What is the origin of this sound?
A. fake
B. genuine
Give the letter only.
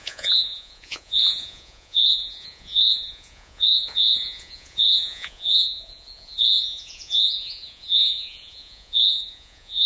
A